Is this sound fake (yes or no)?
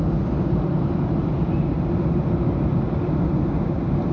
no